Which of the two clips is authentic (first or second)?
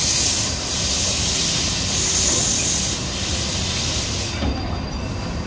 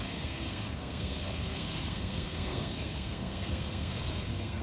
first